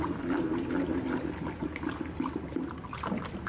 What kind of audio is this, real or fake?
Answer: real